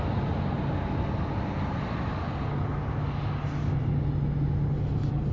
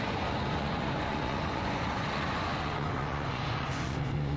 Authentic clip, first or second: first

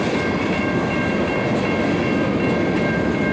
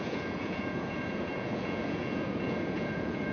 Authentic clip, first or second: first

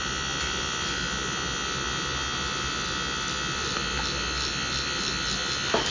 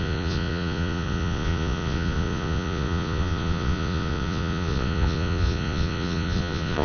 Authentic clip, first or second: first